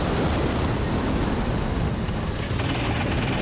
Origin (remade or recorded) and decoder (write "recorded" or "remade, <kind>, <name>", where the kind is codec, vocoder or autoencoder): recorded